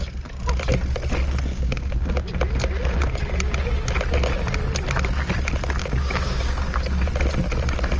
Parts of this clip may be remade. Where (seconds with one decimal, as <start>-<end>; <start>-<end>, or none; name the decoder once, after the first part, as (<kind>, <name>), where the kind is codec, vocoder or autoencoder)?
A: 1.5-2.2 (codec, DAC); 5.8-7.1